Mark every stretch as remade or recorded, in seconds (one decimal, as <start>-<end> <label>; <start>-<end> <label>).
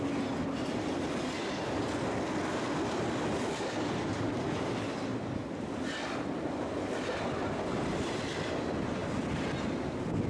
0.0-10.3 recorded